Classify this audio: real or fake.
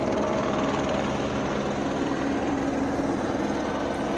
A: real